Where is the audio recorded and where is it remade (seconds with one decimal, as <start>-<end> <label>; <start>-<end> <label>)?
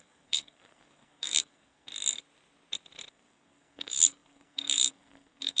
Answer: 0.0-1.9 remade; 1.9-3.1 recorded; 3.1-5.6 remade